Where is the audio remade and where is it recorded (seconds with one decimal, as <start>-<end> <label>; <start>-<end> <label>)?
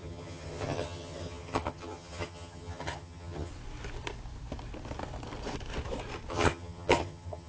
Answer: 0.0-3.5 remade; 3.5-6.3 recorded; 6.3-7.5 remade